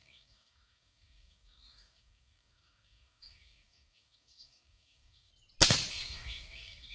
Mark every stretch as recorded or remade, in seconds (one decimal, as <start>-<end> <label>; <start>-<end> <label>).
0.0-5.3 remade; 5.3-5.9 recorded; 5.9-6.9 remade